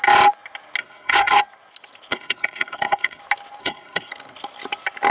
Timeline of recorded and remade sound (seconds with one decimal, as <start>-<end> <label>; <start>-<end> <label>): 0.0-0.8 recorded; 0.8-1.4 remade; 1.4-2.1 recorded; 2.1-3.2 remade; 3.2-3.6 recorded; 3.6-4.1 remade; 4.1-5.1 recorded